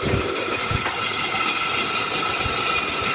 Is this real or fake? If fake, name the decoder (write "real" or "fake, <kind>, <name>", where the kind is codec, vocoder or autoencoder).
real